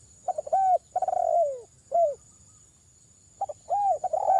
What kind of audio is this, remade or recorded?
recorded